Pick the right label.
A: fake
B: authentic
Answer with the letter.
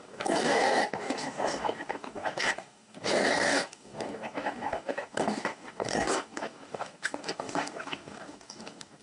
A